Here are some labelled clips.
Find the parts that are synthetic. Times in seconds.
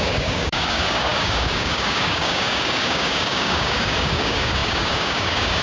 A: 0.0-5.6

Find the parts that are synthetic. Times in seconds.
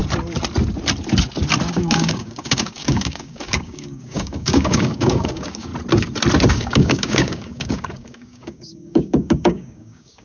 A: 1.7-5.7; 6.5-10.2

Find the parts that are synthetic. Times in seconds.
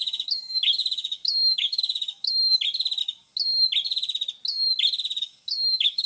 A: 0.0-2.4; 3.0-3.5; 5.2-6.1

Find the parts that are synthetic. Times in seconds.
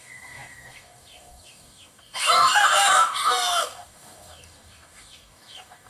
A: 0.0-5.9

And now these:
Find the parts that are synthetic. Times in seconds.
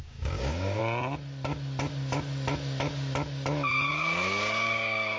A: 0.0-0.8; 3.9-5.2